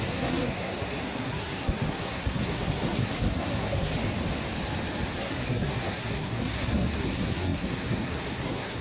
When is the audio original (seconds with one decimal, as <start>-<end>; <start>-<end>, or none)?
3.9-5.2